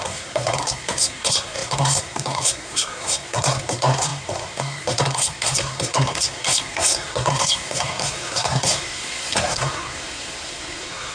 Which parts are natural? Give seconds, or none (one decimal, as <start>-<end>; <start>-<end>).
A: none